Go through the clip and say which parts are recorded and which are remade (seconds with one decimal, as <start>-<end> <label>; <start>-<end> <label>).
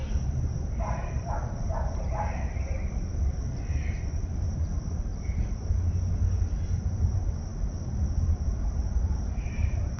0.0-3.1 remade; 3.1-3.9 recorded; 3.9-5.1 remade; 5.1-6.3 recorded; 6.3-7.5 remade; 7.5-8.3 recorded; 8.3-10.0 remade